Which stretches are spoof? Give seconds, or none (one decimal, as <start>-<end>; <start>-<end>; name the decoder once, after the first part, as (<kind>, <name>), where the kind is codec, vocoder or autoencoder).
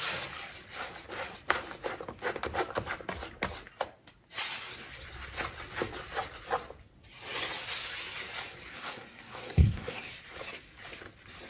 8.7-10.1 (codec, SNAC)